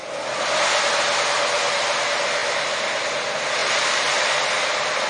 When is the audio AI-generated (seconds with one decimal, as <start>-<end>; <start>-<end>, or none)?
none